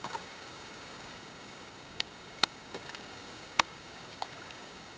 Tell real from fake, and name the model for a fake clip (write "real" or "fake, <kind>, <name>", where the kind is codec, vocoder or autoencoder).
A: fake, codec, DAC